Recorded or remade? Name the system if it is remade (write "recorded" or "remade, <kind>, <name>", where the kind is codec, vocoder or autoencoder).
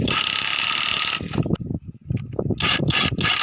recorded